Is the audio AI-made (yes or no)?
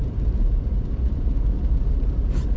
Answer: yes